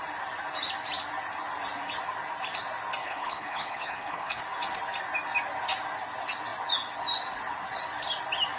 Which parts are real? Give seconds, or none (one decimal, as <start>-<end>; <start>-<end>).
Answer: 0.0-3.0; 4.4-8.6